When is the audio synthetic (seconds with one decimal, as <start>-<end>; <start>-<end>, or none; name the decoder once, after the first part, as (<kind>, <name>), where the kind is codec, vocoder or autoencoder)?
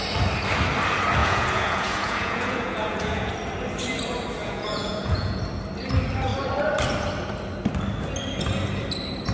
1.2-3.3 (vocoder, Vocos); 4.4-5.4